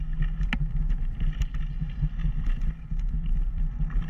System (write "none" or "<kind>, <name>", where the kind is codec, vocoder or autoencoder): vocoder, BigVGAN v2